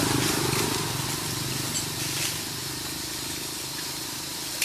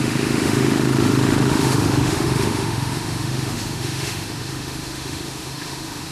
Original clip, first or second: first